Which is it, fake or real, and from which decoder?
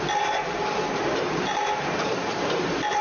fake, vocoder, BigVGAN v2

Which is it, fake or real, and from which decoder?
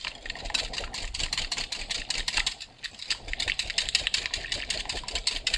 real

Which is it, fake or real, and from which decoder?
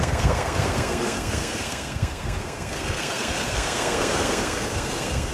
fake, codec, SNAC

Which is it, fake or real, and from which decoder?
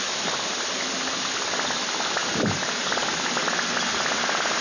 real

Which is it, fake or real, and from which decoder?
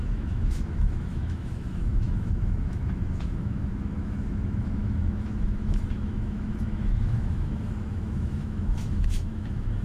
fake, autoencoder, DAC-VAE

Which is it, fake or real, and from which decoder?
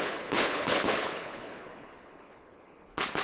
fake, codec, HILCodec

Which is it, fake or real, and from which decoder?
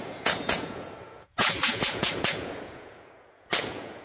fake, vocoder, Vocos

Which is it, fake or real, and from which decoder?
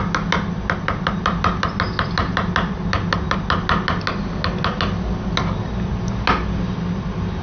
real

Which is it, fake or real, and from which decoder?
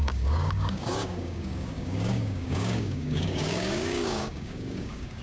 fake, codec, DAC